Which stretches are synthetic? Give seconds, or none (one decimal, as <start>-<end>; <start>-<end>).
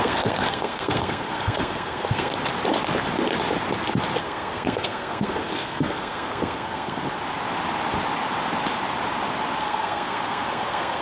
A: 0.0-2.3; 4.2-7.0; 9.6-11.0